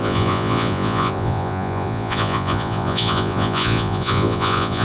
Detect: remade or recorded remade